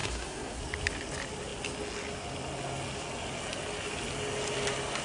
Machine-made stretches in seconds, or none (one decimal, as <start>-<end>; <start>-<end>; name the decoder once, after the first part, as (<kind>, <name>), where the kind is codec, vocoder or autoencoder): 0.0-0.6 (codec, SNAC)